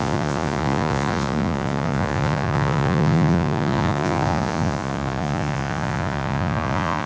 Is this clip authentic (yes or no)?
no